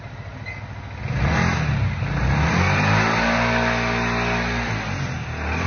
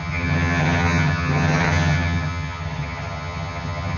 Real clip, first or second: first